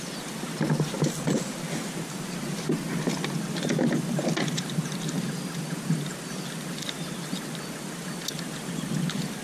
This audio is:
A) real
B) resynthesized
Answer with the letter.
A